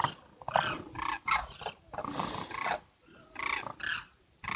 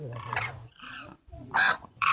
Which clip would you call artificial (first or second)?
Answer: second